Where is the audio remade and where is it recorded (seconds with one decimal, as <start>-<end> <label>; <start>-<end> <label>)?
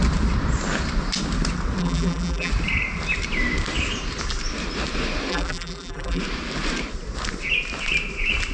0.0-1.8 recorded; 1.8-2.5 remade; 2.5-5.3 recorded; 5.3-6.2 remade; 6.2-8.5 recorded